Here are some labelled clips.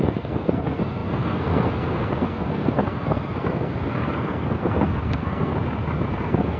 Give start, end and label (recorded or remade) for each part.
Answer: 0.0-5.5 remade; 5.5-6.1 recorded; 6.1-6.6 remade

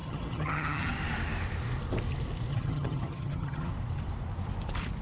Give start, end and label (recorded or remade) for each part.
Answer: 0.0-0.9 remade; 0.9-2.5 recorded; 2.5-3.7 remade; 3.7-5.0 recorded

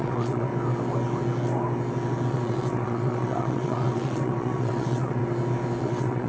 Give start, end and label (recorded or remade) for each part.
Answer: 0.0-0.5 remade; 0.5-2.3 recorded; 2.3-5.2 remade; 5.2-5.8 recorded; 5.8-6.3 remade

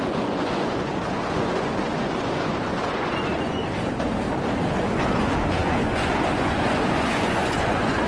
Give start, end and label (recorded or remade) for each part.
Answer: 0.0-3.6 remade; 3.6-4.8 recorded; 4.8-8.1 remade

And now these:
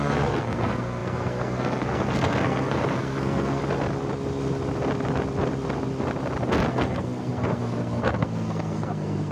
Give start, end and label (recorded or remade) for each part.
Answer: 0.0-3.6 remade; 3.6-6.7 recorded; 6.7-9.3 remade

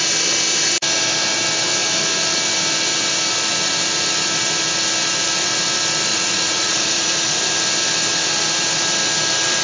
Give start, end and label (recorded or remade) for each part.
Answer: 0.0-6.1 recorded; 6.1-7.4 remade; 7.4-9.6 recorded